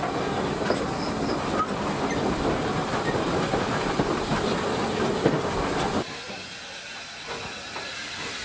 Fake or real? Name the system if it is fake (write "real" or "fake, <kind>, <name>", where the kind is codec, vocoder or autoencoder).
real